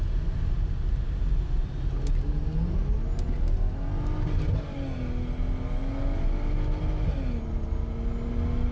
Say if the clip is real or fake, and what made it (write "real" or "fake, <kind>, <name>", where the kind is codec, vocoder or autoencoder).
real